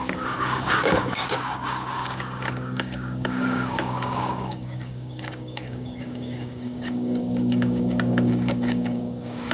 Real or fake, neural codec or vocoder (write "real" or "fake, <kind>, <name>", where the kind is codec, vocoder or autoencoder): fake, codec, DAC